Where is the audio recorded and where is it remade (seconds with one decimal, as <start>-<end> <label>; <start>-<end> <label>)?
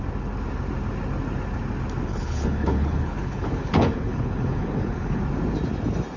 0.0-2.1 recorded; 2.1-5.2 remade; 5.2-6.2 recorded